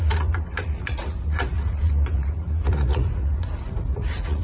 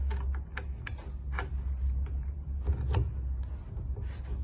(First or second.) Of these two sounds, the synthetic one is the first